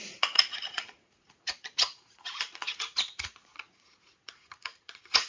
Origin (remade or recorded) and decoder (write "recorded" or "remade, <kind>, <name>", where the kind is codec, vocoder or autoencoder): remade, vocoder, Vocos